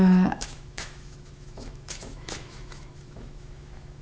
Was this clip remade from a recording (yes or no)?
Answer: yes